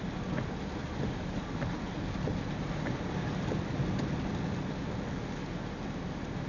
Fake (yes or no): no